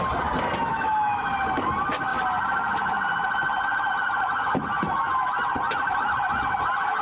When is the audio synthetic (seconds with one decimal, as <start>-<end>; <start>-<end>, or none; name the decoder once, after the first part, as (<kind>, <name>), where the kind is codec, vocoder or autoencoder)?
0.7-1.2 (autoencoder, DAC-VAE)